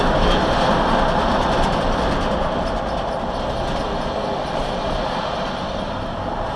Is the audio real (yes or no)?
yes